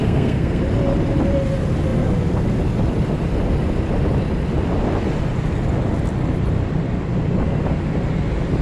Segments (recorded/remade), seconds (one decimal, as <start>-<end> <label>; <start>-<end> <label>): 0.0-0.6 remade; 0.6-8.6 recorded